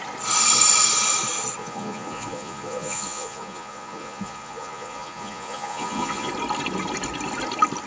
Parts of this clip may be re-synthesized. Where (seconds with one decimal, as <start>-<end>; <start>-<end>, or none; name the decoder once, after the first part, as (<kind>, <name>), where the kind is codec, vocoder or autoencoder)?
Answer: 1.6-6.3 (vocoder, Vocos)